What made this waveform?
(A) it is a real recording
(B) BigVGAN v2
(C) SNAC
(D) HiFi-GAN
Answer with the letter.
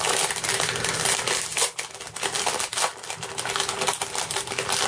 A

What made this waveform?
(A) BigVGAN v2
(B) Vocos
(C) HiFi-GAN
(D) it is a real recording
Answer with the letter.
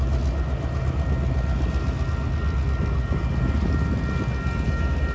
D